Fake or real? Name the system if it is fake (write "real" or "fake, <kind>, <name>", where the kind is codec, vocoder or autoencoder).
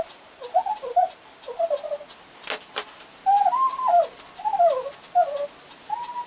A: real